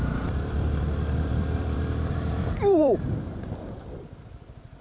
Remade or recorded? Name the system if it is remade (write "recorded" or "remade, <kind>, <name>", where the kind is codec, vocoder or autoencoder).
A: remade, vocoder, BigVGAN v2